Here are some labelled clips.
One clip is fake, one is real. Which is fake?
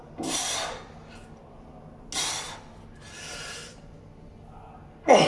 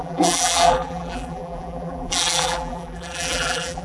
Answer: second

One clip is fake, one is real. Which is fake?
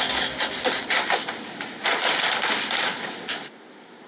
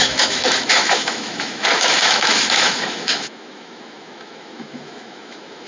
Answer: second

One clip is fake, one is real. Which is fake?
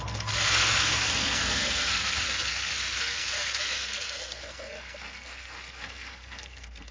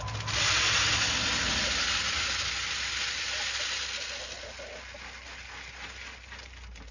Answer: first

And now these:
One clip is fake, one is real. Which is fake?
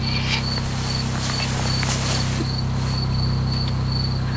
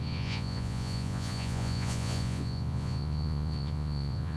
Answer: second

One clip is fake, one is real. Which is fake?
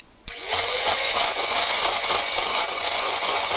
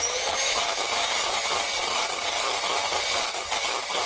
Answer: first